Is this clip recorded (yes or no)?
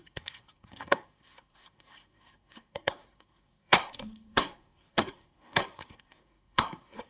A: no